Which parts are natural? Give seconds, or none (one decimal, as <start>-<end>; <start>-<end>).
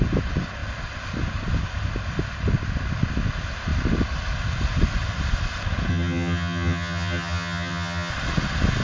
0.0-5.9; 8.1-8.8